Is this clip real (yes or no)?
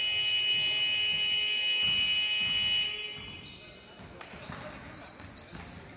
yes